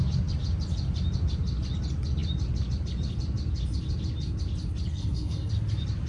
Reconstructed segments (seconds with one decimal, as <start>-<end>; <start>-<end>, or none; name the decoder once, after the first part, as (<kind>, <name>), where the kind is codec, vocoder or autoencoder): 4.9-5.5 (codec, SNAC)